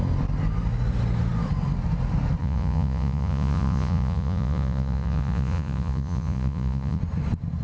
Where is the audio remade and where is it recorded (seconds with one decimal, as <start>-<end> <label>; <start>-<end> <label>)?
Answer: 0.0-2.4 recorded; 2.4-7.0 remade; 7.0-7.6 recorded